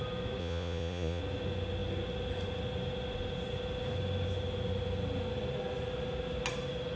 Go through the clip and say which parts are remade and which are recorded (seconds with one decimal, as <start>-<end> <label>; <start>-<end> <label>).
0.0-0.4 recorded; 0.4-1.2 remade; 1.2-7.0 recorded